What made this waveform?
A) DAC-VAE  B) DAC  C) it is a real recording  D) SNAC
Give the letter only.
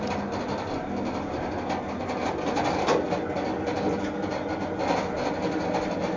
C